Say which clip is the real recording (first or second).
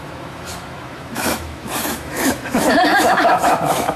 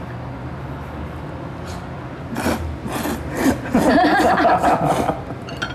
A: second